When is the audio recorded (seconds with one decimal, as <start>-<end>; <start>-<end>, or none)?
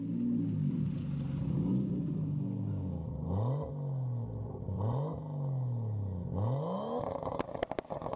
0.0-8.2